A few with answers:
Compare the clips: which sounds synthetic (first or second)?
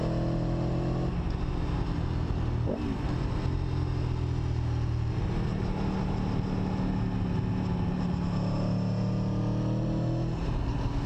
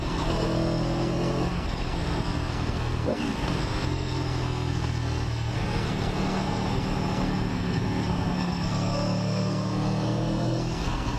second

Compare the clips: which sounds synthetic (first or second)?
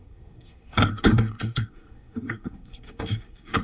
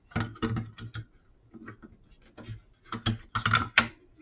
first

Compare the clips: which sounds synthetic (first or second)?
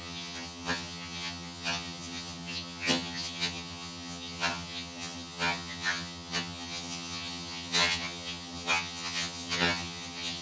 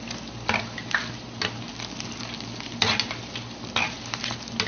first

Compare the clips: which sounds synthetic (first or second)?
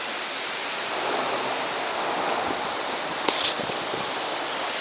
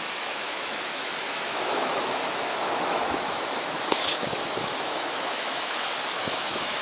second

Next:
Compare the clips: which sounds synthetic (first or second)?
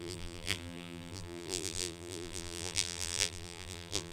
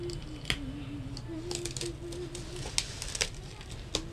first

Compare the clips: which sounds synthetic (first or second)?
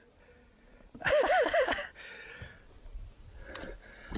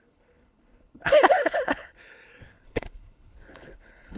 second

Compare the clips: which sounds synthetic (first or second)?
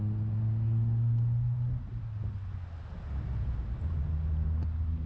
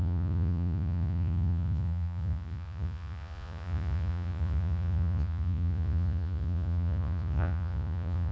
second